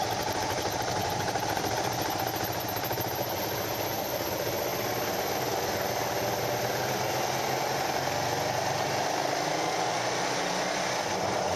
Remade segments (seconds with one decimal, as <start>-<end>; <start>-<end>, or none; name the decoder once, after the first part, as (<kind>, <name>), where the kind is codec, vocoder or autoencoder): 1.0-3.4 (vocoder, BigVGAN v2)